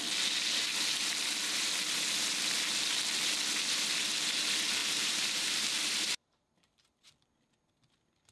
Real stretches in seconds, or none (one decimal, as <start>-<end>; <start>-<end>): 0.0-4.8; 7.1-8.3